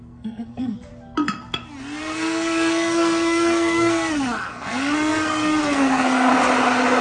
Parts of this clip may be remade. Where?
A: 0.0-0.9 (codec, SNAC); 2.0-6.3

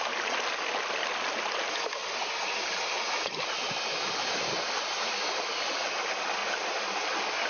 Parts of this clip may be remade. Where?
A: none

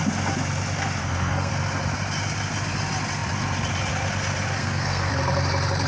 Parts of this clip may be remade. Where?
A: 1.0-1.5 (codec, SNAC); 4.6-5.1

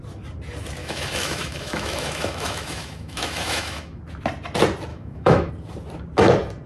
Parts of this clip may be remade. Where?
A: 0.8-4.0 (autoencoder, DAC-VAE); 4.9-5.5

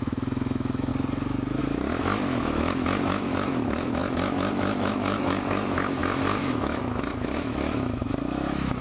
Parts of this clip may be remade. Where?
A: 0.0-0.9 (autoencoder, DAC-VAE); 1.6-8.8

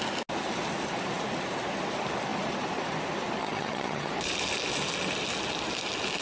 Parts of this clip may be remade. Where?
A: 3.4-4.1 (vocoder, HiFi-GAN)

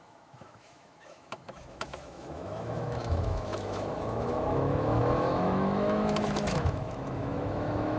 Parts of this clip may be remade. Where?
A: 0.0-8.0 (autoencoder, DAC-VAE)

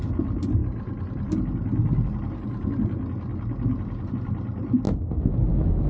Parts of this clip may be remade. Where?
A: none